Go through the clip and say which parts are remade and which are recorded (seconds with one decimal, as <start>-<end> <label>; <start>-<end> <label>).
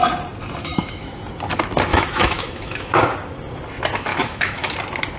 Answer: 0.0-0.6 recorded; 0.6-1.2 remade; 1.2-1.9 recorded; 1.9-3.0 remade; 3.0-4.1 recorded; 4.1-4.7 remade; 4.7-5.2 recorded